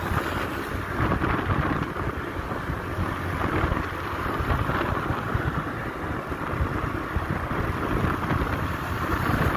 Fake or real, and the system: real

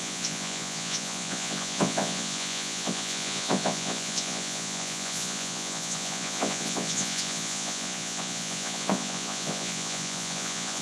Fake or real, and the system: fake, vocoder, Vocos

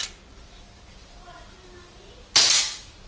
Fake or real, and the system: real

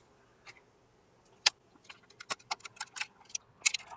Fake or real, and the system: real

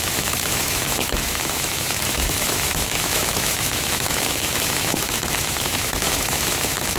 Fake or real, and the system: fake, autoencoder, DAC-VAE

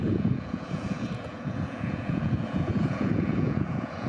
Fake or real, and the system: fake, vocoder, Vocos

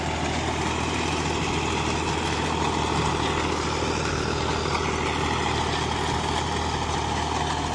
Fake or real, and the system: real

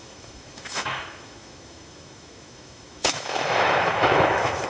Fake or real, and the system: fake, autoencoder, DAC-VAE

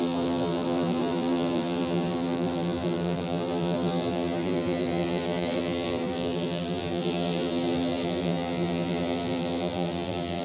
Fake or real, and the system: fake, vocoder, BigVGAN v2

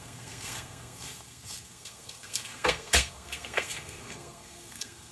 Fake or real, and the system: fake, codec, SNAC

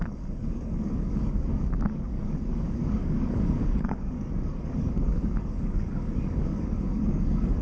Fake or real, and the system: fake, codec, DAC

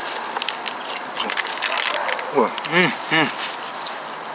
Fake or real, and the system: real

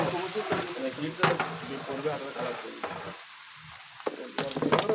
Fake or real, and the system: real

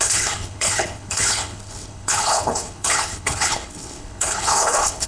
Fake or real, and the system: fake, codec, HILCodec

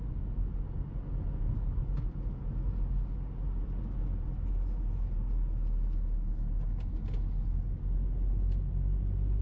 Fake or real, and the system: real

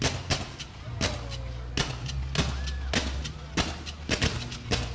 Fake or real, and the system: real